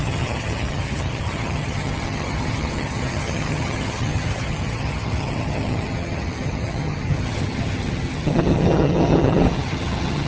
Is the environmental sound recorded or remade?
remade